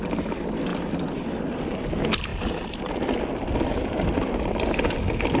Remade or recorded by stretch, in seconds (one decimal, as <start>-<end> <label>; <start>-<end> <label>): 0.0-0.7 recorded; 0.7-1.3 remade; 1.3-2.3 recorded; 2.3-4.5 remade; 4.5-5.4 recorded